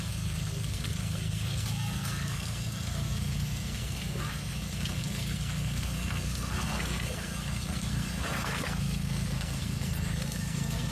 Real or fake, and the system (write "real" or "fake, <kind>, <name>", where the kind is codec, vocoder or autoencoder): fake, codec, SNAC